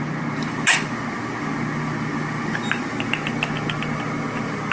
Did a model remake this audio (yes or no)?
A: no